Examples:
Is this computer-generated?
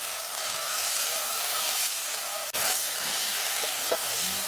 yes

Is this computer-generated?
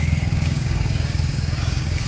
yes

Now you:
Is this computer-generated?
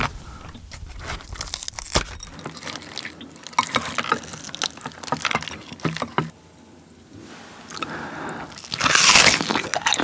no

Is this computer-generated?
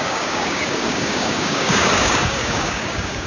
yes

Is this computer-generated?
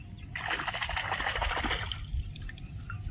no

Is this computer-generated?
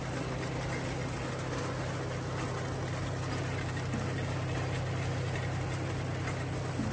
no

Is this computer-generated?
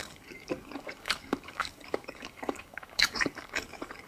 yes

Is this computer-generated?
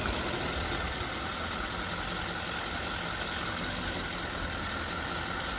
no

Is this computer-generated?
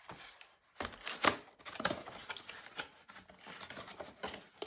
no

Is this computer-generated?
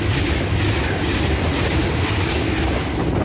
no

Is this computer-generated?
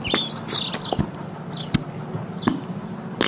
no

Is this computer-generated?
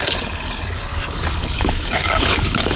yes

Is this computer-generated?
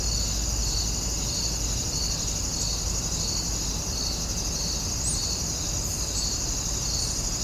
no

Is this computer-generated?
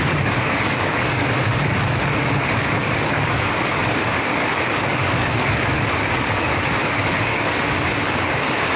yes